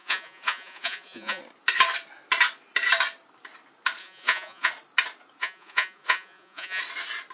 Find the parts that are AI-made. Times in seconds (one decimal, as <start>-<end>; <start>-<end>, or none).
0.0-1.4; 4.0-4.7; 5.4-6.8